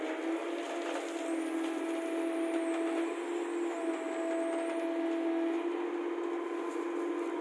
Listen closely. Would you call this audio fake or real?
real